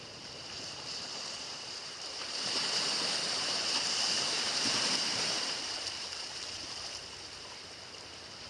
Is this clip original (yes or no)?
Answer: no